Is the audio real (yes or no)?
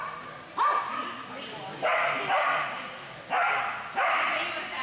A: yes